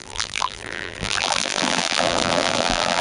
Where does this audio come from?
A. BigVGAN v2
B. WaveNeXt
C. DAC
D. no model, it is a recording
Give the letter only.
A